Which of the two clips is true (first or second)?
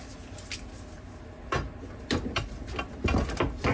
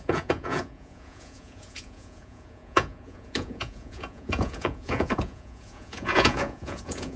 first